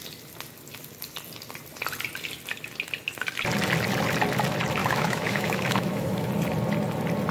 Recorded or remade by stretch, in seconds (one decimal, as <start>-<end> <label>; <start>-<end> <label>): 0.0-4.8 recorded; 4.8-6.3 remade; 6.3-7.3 recorded